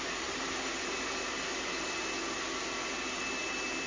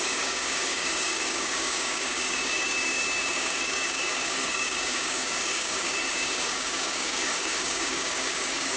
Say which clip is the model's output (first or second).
second